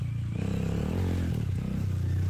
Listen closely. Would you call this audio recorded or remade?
recorded